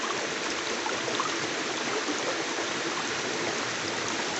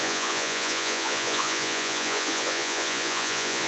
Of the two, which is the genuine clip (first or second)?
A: first